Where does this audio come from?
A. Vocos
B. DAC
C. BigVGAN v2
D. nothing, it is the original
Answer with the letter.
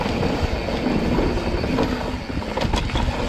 D